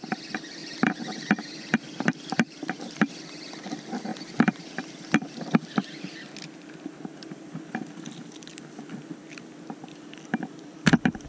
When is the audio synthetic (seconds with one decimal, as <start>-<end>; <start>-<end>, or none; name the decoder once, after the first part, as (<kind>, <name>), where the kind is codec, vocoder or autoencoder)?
0.6-3.1 (vocoder, BigVGAN v2); 4.1-4.7